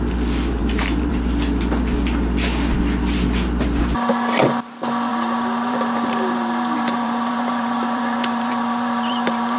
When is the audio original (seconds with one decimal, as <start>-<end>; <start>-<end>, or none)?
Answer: 0.0-0.6; 1.1-5.1